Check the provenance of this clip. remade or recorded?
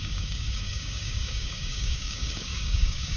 remade